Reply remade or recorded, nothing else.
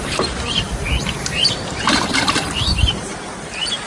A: remade